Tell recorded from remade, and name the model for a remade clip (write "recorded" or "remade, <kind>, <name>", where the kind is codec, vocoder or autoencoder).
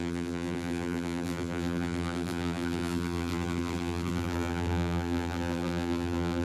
remade, vocoder, BigVGAN v2